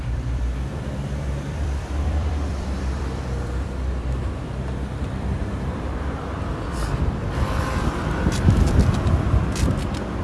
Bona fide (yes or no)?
no